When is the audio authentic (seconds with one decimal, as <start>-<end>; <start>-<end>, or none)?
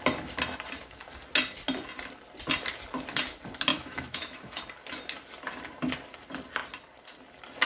0.0-3.7; 4.6-7.7